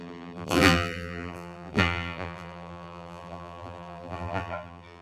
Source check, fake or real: fake